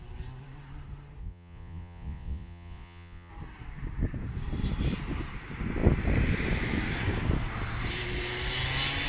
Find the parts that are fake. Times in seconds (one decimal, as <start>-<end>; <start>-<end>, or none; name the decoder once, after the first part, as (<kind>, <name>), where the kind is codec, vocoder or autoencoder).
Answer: 1.2-3.3 (vocoder, Vocos)

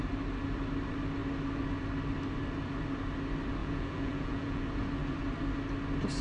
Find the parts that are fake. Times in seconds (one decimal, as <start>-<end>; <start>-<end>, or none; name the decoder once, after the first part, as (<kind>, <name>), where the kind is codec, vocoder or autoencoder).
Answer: 3.6-4.6 (vocoder, Vocos)

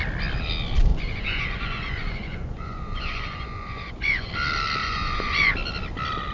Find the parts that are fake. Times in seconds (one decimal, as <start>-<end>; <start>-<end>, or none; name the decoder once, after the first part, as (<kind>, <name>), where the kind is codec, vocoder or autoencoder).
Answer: 0.9-4.3 (vocoder, Vocos); 4.8-5.5

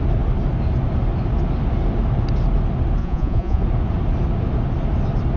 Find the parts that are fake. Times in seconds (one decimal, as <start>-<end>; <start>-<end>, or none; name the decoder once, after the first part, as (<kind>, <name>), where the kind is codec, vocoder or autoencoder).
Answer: 3.0-3.6 (vocoder, Vocos)

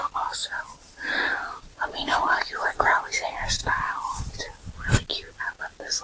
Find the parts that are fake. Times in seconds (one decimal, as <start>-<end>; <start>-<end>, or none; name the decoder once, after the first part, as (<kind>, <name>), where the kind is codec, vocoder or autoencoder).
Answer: 0.4-3.1 (vocoder, Vocos); 3.6-4.4

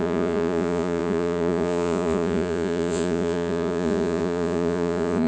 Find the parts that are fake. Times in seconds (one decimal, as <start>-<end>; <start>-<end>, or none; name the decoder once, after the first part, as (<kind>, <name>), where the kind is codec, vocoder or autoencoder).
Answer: 0.0-5.3 (vocoder, Vocos)

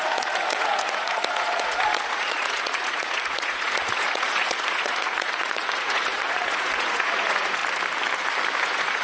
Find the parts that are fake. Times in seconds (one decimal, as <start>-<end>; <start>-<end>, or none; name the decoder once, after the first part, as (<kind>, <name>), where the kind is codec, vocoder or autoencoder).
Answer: 0.0-7.6 (vocoder, Vocos); 8.6-9.0

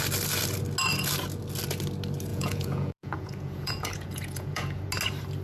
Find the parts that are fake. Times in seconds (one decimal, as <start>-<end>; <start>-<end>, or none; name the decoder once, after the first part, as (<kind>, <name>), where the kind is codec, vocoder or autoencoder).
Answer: 2.3-4.8 (vocoder, Vocos)